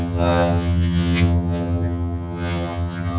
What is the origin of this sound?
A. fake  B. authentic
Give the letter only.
A